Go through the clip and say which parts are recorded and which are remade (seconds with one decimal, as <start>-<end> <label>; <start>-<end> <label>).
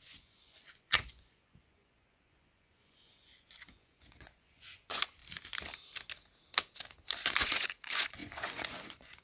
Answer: 0.0-5.2 remade; 5.2-7.4 recorded; 7.4-9.2 remade